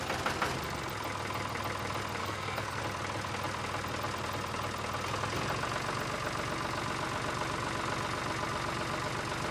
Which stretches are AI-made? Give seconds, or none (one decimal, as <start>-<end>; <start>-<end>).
2.2-2.8